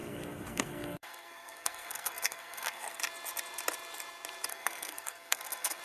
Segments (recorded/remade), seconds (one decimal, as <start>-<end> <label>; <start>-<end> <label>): 0.0-3.0 remade; 3.0-4.5 recorded; 4.5-5.8 remade